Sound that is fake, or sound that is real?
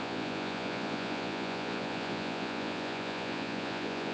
fake